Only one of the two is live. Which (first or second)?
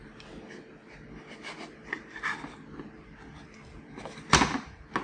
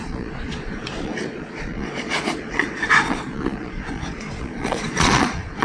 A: first